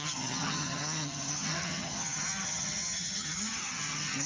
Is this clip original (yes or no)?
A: no